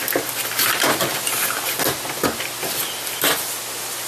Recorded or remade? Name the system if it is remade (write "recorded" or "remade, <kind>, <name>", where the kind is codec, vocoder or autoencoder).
recorded